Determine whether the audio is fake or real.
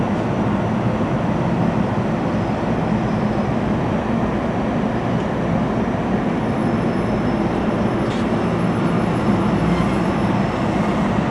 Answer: real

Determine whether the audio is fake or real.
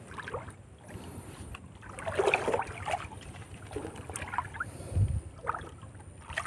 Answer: real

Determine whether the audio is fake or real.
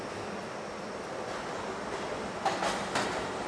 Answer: real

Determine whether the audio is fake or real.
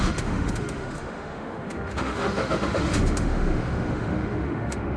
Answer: fake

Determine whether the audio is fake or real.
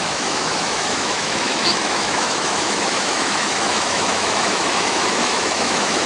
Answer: fake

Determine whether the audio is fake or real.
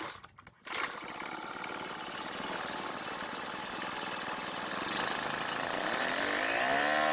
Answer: real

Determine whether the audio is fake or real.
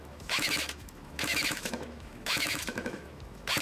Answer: fake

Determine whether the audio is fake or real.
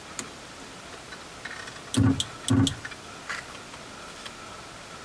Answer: real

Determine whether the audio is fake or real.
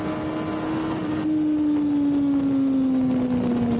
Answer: real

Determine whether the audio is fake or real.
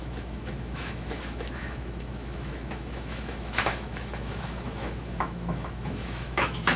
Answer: fake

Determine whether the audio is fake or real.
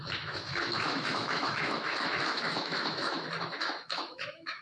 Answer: fake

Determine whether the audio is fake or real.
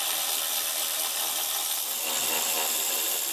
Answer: real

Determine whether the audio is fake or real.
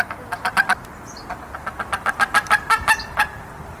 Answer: real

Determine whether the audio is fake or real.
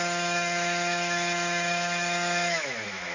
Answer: fake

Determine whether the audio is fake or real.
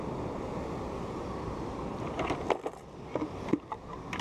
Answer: real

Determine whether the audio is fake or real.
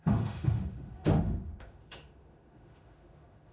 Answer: fake